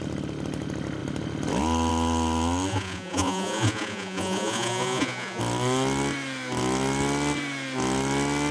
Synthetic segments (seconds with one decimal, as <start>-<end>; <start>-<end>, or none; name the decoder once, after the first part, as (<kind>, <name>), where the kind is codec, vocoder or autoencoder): 2.7-5.4 (vocoder, Vocos)